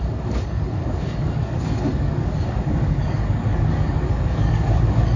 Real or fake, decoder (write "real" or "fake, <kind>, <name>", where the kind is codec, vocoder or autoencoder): fake, codec, DAC